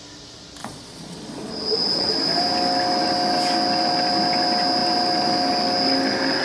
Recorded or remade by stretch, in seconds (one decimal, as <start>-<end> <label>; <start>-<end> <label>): 0.0-0.6 recorded; 0.6-2.1 remade; 2.1-6.4 recorded